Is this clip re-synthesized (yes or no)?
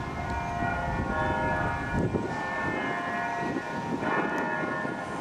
no